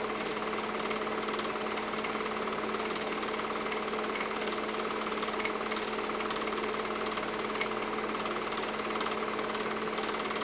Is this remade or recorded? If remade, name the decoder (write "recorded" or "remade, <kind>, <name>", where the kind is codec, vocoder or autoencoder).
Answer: recorded